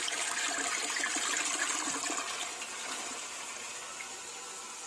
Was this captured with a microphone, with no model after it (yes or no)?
yes